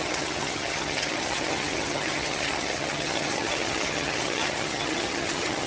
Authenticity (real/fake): fake